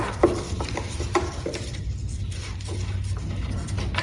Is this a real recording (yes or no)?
yes